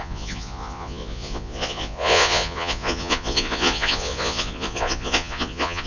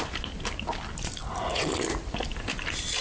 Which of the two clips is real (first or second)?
second